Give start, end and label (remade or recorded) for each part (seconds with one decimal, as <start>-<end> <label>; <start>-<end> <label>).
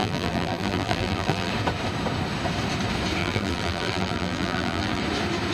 0.0-1.5 remade; 1.5-3.2 recorded; 3.2-5.0 remade; 5.0-5.5 recorded